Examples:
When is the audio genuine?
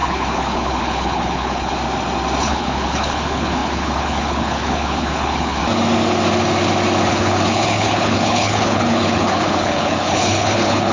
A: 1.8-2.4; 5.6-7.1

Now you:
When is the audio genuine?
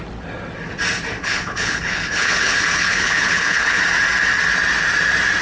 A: 0.0-1.2; 3.8-5.4